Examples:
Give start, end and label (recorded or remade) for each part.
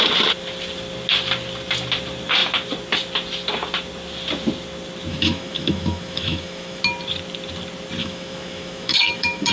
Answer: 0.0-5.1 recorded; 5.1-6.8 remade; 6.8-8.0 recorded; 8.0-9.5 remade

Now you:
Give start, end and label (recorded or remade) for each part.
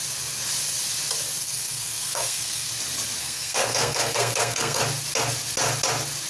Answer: 0.0-1.4 recorded; 1.4-2.7 remade; 2.7-3.2 recorded; 3.2-4.8 remade; 4.8-6.3 recorded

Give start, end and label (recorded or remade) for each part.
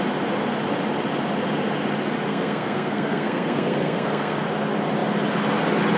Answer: 0.0-2.3 recorded; 2.3-4.4 remade; 4.4-6.0 recorded